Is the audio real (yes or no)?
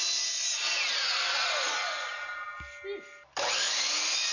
yes